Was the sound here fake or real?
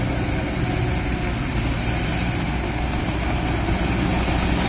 real